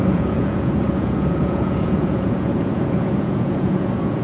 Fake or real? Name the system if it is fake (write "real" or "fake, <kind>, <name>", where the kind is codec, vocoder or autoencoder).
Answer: fake, vocoder, Vocos